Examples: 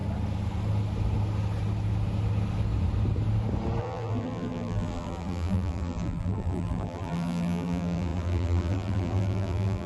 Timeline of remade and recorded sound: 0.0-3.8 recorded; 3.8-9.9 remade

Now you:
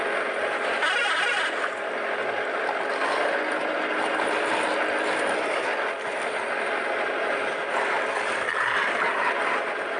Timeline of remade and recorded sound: 0.0-3.2 remade; 3.2-10.0 recorded

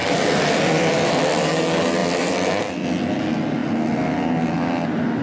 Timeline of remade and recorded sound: 0.0-1.1 remade; 1.1-2.0 recorded; 2.0-2.6 remade; 2.6-5.2 recorded

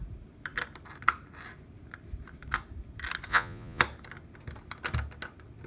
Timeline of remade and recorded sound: 0.0-3.3 recorded; 3.3-3.8 remade; 3.8-5.7 recorded

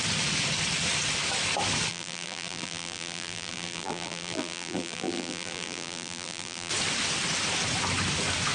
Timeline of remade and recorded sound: 0.0-1.9 recorded; 1.9-6.7 remade; 6.7-8.5 recorded

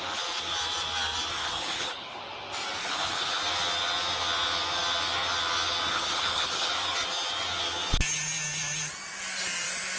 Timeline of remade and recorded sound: 0.0-1.3 recorded; 1.3-2.2 remade; 2.2-2.8 recorded; 2.8-3.4 remade; 3.4-5.9 recorded; 5.9-6.7 remade; 6.7-10.0 recorded